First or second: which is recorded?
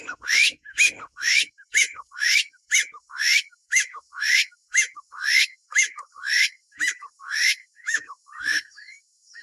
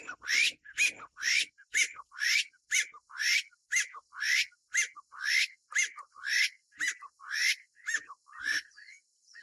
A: second